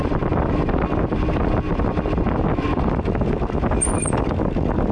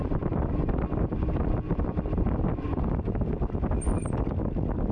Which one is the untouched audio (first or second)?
first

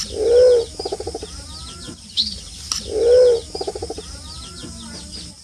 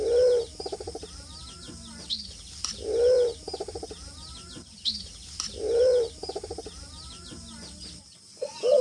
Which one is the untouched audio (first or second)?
first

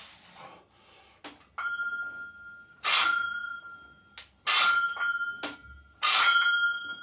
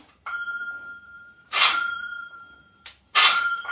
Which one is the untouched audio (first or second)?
first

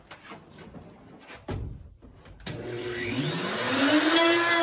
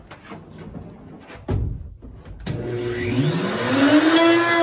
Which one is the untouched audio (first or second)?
second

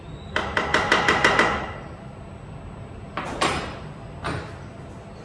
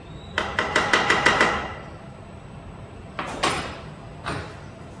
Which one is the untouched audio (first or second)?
first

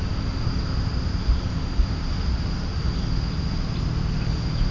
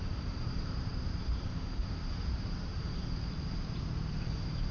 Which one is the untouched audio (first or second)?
first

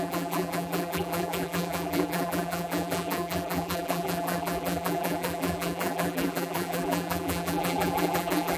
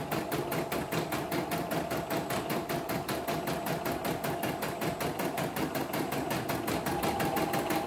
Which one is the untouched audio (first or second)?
second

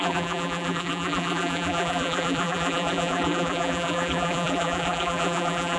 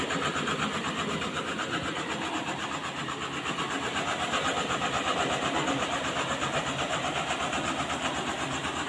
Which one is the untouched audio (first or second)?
second